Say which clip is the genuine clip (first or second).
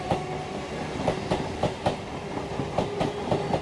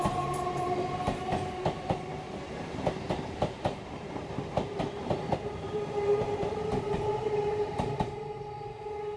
first